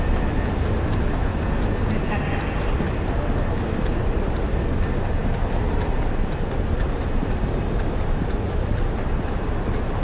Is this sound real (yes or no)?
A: yes